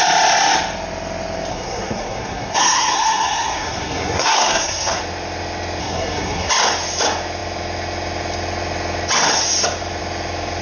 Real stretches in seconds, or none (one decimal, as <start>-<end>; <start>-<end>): 0.0-1.5; 5.0-5.8; 6.5-10.6